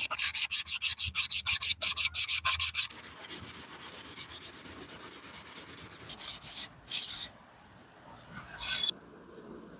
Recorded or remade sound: recorded